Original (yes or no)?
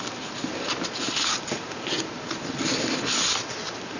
yes